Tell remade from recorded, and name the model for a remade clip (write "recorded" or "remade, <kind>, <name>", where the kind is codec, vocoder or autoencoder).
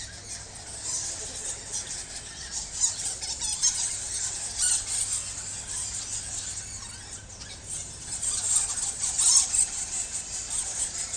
recorded